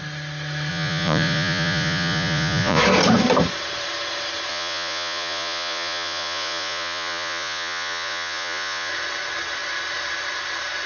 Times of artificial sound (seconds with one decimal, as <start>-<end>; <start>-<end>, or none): 0.7-2.8; 4.5-8.9